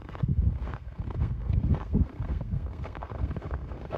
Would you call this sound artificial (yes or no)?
yes